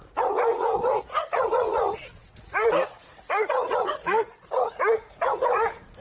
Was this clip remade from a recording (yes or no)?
yes